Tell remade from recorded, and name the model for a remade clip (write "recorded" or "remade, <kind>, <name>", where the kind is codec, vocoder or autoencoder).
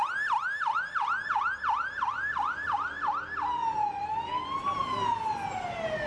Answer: recorded